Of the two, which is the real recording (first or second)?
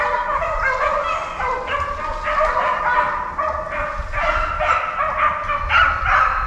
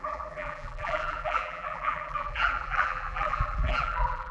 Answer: first